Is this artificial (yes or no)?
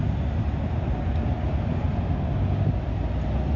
no